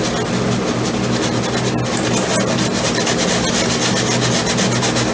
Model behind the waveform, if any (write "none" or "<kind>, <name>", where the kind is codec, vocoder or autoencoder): none